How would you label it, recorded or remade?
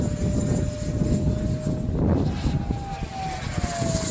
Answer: recorded